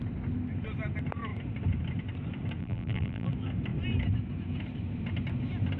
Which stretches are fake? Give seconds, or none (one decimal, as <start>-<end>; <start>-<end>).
2.6-3.3